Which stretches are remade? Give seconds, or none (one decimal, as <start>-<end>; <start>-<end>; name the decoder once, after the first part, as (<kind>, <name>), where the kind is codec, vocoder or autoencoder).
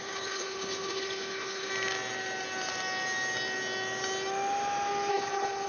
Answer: 0.0-1.7 (codec, HILCodec); 5.1-5.7